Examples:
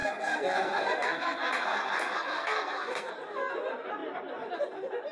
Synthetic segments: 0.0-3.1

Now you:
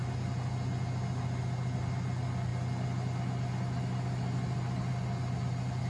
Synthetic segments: none

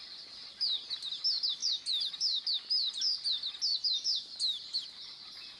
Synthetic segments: none

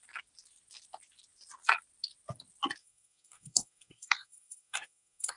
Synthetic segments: 2.8-5.4

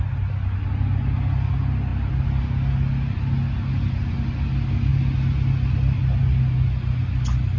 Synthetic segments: none